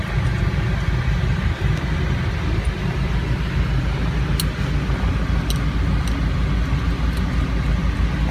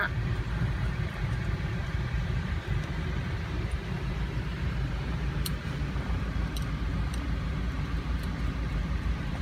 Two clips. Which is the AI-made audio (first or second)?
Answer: second